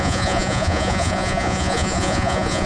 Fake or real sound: fake